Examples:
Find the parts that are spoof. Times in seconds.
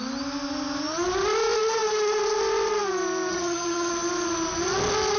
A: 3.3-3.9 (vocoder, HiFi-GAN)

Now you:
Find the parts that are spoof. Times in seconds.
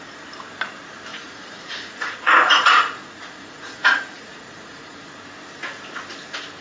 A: 1.1-5.1 (vocoder, Vocos)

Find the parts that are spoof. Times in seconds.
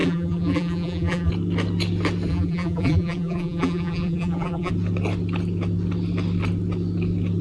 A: 0.0-1.3 (vocoder, BigVGAN v2); 2.3-4.7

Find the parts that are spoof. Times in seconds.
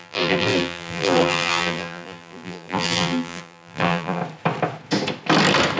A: 0.0-4.2 (vocoder, BigVGAN v2)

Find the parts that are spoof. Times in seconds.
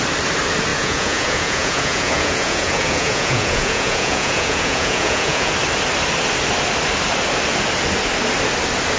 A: 0.7-5.5 (vocoder, Vocos)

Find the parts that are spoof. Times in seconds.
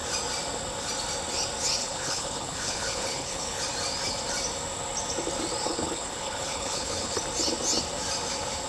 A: 1.8-3.6 (codec, HILCodec); 5.6-7.1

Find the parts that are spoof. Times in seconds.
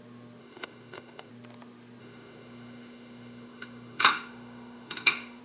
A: 0.4-1.3 (autoencoder, DAC-VAE); 2.0-5.4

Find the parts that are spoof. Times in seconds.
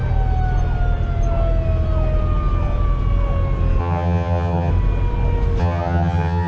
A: 3.8-4.7 (vocoder, HiFi-GAN); 5.6-6.5